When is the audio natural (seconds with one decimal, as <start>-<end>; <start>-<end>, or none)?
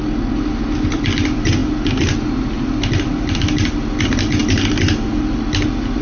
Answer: 0.0-6.0